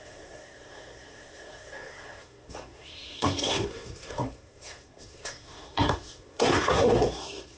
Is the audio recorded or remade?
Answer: remade